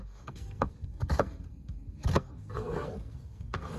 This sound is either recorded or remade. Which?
remade